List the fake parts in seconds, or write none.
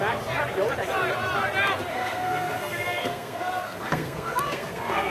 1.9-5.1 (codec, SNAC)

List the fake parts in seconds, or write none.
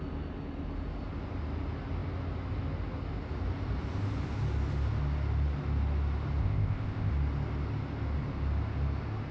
6.4-7.1 (codec, ZipCodec)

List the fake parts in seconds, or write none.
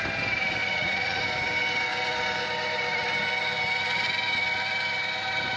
0.6-1.2 (vocoder, Vocos)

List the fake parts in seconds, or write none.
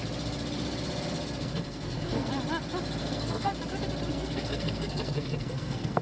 1.4-2.3 (codec, SNAC); 3.0-3.5; 4.1-6.0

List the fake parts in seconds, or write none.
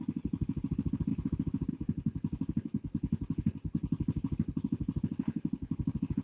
1.1-1.7 (vocoder, BigVGAN v2)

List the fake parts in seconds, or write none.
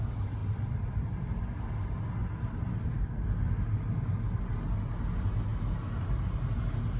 0.4-1.4 (vocoder, BigVGAN v2); 2.2-3.6